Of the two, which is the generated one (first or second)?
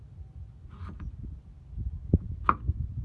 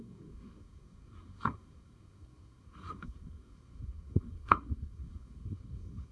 second